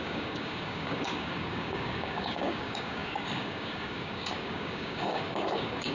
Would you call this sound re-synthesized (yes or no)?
yes